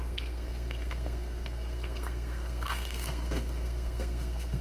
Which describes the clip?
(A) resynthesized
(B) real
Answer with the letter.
A